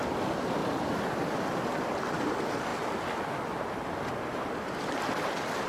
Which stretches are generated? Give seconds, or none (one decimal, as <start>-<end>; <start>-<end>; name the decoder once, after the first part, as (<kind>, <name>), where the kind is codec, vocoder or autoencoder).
none